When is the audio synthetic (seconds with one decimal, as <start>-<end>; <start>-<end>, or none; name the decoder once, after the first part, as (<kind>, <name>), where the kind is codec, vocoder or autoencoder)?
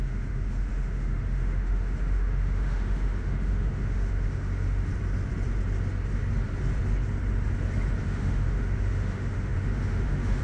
0.0-4.9 (autoencoder, DAC-VAE); 8.0-10.4